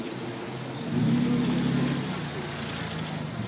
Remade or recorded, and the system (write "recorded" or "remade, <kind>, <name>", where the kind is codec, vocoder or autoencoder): recorded